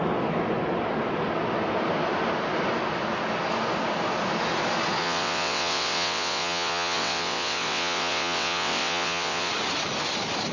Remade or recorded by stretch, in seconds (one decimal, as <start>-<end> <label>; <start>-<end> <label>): 0.0-5.0 recorded; 5.0-9.5 remade; 9.5-10.5 recorded